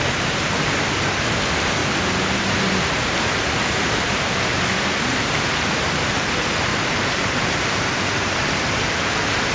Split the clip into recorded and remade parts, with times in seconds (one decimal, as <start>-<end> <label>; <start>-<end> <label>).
0.0-6.7 recorded; 6.7-8.5 remade; 8.5-9.5 recorded